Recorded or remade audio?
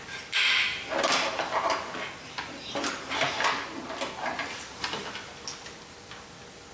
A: recorded